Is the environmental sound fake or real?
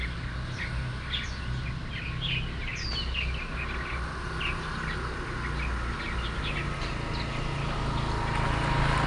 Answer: real